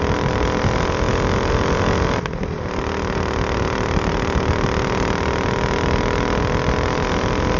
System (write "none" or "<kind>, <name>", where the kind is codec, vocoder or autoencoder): none